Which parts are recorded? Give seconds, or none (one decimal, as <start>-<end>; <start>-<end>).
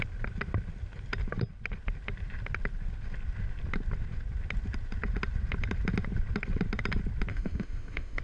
0.0-7.3